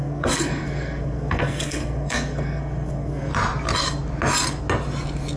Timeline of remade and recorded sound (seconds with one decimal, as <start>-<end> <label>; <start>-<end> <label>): 0.0-3.3 remade; 3.3-5.4 recorded